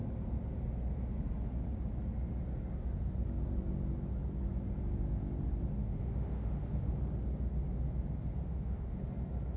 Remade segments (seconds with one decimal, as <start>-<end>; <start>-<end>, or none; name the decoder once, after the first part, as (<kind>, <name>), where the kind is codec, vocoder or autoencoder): 5.8-6.9 (autoencoder, DAC-VAE); 8.4-9.0